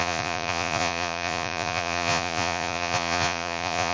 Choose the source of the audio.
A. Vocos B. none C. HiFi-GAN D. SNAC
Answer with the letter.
A